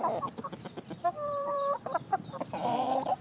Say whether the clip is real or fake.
fake